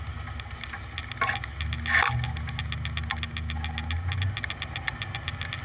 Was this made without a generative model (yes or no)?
yes